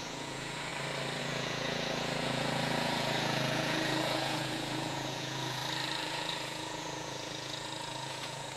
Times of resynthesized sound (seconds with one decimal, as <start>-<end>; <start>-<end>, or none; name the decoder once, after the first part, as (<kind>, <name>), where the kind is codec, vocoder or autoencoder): 0.0-0.7 (vocoder, Vocos); 1.2-5.6; 6.1-8.6